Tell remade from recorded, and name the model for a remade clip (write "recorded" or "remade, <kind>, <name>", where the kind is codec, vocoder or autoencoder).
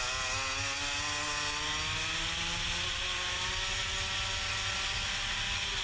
recorded